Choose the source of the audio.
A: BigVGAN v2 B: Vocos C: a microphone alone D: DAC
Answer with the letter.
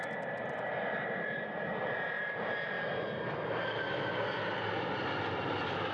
C